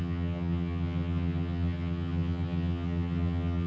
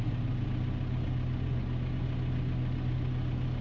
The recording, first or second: second